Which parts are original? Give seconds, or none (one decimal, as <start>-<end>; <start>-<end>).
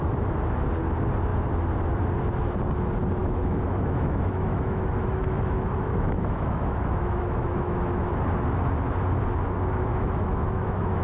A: 0.0-3.2; 8.1-9.9